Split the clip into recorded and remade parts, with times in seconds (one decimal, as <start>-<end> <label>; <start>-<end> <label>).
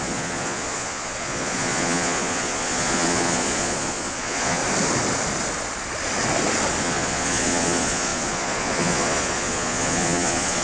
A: 0.0-4.6 remade; 4.6-6.8 recorded; 6.8-10.6 remade